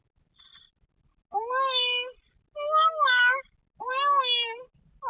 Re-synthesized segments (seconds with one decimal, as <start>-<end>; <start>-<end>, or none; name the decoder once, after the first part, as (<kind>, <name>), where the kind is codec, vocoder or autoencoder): none